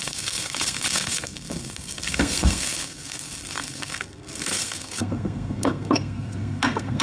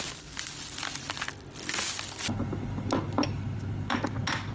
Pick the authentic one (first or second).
second